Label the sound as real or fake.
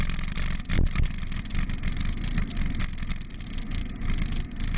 real